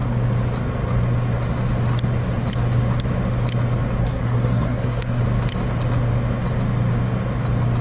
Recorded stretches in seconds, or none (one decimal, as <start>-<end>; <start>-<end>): 0.0-4.0; 5.2-7.8